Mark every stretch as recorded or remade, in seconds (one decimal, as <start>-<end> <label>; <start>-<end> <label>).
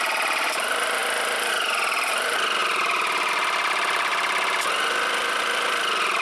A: 0.0-6.2 recorded